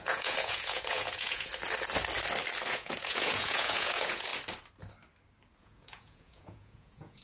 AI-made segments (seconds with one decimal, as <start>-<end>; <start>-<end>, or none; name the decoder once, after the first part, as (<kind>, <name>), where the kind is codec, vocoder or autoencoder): 0.0-1.5 (vocoder, Vocos); 2.7-4.3; 5.6-7.2